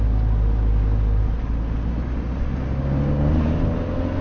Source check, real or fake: real